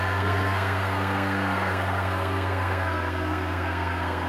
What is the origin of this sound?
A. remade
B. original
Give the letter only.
A